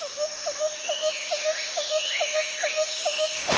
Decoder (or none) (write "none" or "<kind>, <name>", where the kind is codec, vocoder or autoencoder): autoencoder, DAC-VAE